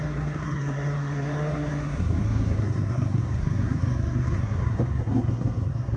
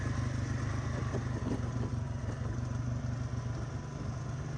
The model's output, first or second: first